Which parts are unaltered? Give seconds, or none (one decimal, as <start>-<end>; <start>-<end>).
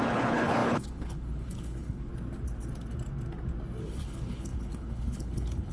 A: 2.1-3.8